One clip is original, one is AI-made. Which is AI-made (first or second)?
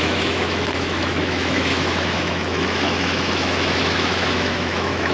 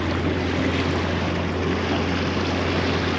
first